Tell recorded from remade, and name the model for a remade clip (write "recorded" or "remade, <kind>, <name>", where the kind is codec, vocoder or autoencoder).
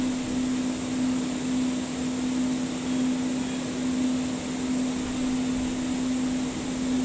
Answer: recorded